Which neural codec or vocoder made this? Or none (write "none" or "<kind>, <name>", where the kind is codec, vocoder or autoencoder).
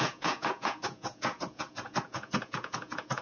vocoder, Vocos